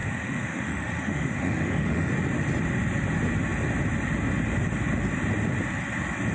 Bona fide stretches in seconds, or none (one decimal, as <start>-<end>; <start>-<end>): 2.1-6.3